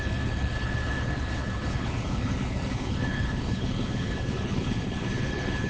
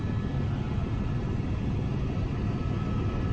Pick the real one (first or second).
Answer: second